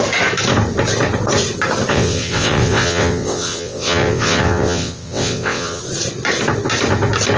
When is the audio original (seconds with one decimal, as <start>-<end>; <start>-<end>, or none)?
0.0-1.9; 5.8-7.4